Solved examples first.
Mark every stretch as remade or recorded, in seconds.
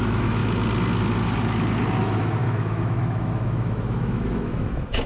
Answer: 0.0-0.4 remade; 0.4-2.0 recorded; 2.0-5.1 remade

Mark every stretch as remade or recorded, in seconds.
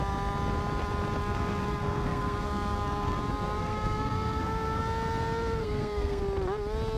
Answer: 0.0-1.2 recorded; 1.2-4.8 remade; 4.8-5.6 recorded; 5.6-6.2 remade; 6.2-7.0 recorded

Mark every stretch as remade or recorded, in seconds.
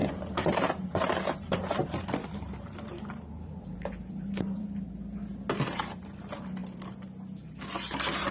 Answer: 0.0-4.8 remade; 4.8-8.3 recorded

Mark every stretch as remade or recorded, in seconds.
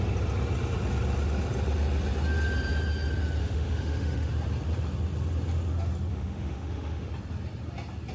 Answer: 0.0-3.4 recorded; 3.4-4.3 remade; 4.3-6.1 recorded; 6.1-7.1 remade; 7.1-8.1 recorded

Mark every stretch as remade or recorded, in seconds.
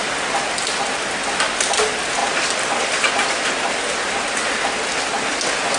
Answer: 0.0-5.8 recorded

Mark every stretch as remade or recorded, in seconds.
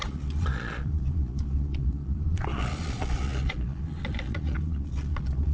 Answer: 0.0-5.5 remade